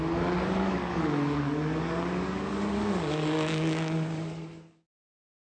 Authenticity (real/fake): fake